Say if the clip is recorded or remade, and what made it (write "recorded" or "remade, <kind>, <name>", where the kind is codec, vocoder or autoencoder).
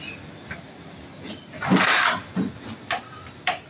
recorded